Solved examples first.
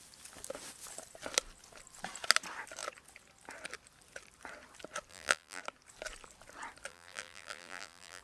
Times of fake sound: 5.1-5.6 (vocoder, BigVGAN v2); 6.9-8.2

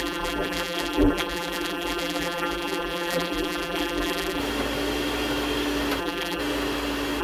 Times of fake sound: 0.0-4.4 (vocoder, BigVGAN v2); 6.0-6.4